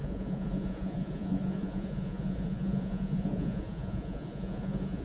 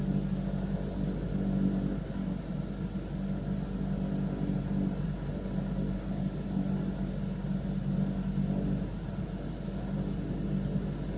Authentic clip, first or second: second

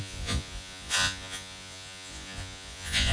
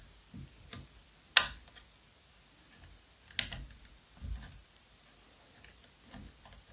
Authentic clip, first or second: second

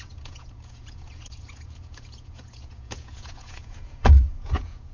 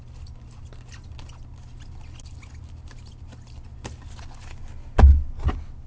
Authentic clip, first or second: second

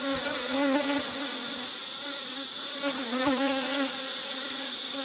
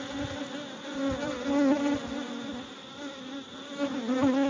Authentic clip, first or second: second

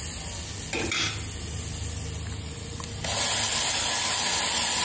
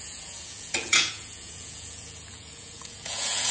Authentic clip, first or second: first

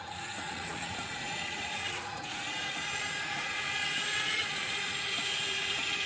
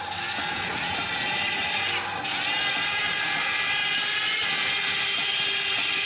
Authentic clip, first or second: second